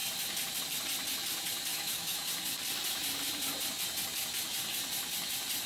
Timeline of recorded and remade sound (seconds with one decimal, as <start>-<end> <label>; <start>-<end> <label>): 0.0-1.7 recorded; 1.7-2.3 remade; 2.3-5.7 recorded